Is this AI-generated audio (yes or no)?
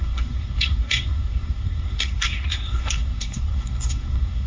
yes